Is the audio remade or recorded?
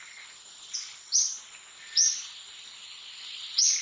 recorded